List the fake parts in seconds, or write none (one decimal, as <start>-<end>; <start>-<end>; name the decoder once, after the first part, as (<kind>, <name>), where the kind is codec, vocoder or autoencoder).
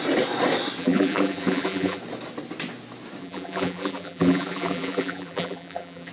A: 0.8-2.0 (vocoder, BigVGAN v2); 3.2-6.1